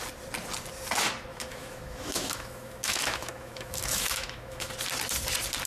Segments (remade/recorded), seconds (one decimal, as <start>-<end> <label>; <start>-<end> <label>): 0.0-1.3 recorded; 1.3-4.7 remade; 4.7-5.7 recorded